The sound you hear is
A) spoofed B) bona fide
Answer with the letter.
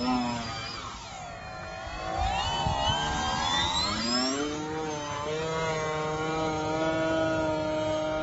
B